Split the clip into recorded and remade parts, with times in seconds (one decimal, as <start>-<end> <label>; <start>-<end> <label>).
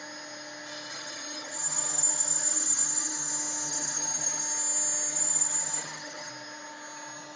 0.0-0.9 recorded; 0.9-3.3 remade; 3.3-3.7 recorded; 3.7-4.4 remade; 4.4-5.1 recorded; 5.1-6.3 remade; 6.3-7.4 recorded